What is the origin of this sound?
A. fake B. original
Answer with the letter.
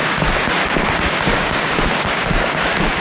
A